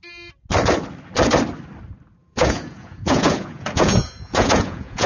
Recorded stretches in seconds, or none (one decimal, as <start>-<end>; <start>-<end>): 0.0-2.2